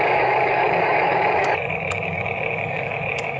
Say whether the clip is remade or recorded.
remade